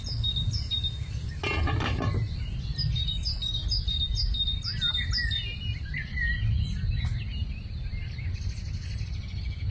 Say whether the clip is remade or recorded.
recorded